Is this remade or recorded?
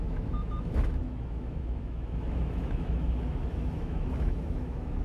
remade